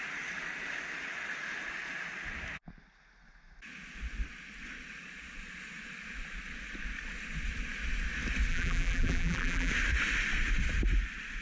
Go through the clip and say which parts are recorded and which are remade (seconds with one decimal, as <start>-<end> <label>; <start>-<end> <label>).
0.0-8.5 recorded; 8.5-9.7 remade; 9.7-11.4 recorded